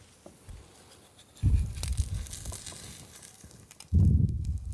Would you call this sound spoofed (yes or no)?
no